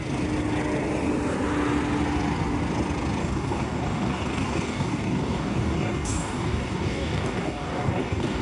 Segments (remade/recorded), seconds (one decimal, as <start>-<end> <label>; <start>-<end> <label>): 0.0-3.2 recorded; 3.2-8.4 remade